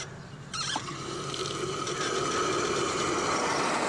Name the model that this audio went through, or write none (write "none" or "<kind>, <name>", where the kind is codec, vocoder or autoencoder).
none